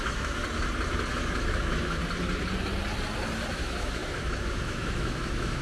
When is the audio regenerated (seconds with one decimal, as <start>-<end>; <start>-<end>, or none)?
0.0-0.4; 1.1-2.0; 3.5-5.6